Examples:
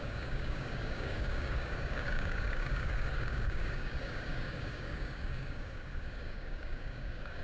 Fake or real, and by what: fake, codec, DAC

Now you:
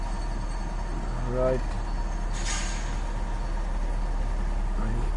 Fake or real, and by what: real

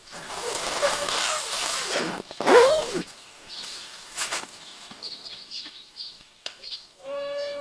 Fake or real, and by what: fake, codec, DAC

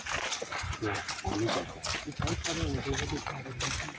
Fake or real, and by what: real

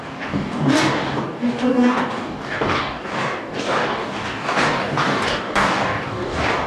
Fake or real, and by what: fake, codec, DAC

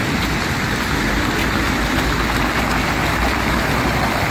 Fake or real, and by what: real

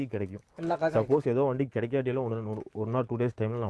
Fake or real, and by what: fake, codec, DAC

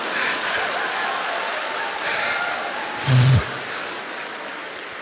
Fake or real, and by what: real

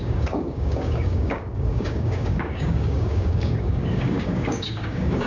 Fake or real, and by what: fake, codec, DAC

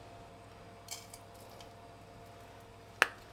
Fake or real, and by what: real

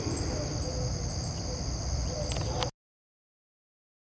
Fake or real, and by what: real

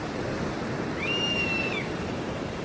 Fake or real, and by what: real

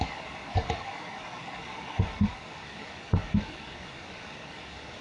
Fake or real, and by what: fake, codec, DAC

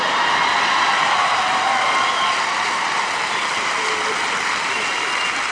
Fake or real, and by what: real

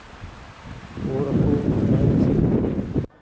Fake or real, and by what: real